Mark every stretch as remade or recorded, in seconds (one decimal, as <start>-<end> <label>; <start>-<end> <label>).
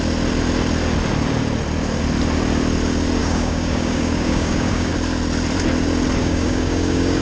0.0-3.2 recorded; 3.2-4.9 remade; 4.9-6.2 recorded; 6.2-7.2 remade